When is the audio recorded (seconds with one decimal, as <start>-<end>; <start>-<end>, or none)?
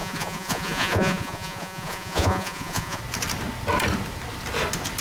3.0-5.0